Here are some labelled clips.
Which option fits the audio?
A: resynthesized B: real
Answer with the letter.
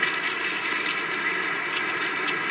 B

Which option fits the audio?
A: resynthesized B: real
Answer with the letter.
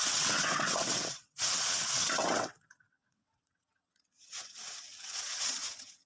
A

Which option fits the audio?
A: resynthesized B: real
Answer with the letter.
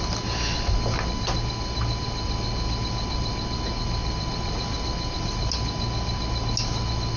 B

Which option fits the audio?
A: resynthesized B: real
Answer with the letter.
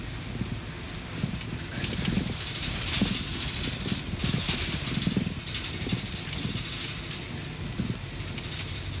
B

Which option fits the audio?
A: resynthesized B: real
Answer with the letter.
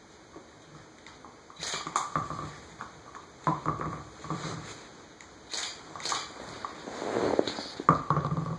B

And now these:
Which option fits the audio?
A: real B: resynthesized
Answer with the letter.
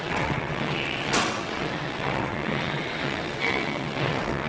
B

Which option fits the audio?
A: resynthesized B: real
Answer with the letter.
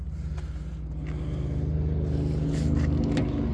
B